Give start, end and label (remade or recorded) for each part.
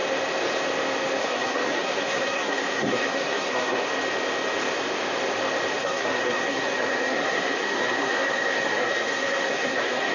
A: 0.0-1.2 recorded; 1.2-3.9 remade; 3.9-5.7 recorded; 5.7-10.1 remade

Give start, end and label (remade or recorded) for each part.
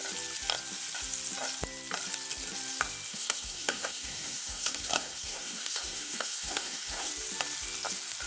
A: 0.0-3.1 recorded; 3.1-7.1 remade; 7.1-8.3 recorded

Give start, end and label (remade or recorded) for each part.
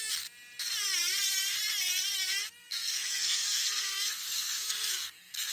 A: 0.0-2.6 recorded; 2.6-5.5 remade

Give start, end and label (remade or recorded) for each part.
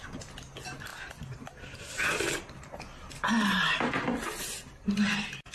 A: 0.0-5.5 recorded